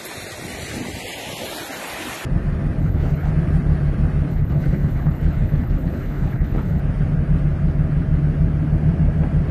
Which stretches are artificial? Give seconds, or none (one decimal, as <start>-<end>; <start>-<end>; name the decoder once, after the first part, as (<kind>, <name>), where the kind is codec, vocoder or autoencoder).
2.8-3.3 (codec, HILCodec); 4.3-6.8